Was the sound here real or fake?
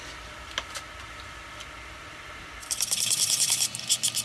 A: real